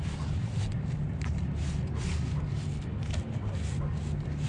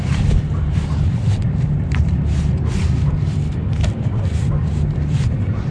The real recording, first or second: first